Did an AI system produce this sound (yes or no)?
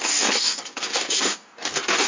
yes